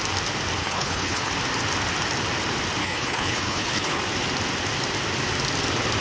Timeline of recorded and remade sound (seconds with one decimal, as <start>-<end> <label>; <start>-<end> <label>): 0.0-0.6 recorded; 0.6-1.3 remade; 1.3-2.8 recorded; 2.8-4.0 remade; 4.0-6.0 recorded